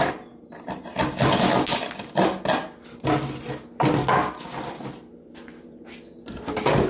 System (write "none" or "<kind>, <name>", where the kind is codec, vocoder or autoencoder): none